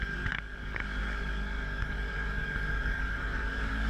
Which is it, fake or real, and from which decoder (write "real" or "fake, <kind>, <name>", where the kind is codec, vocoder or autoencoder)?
fake, codec, DAC